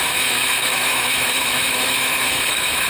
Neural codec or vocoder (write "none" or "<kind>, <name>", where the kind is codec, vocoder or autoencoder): autoencoder, DAC-VAE